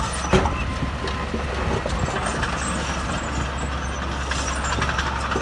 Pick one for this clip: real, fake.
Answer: real